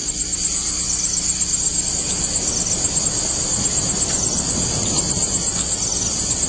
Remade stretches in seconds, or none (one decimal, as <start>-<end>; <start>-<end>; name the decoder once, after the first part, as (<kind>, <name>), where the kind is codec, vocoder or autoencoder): none